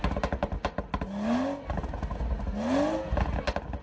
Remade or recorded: recorded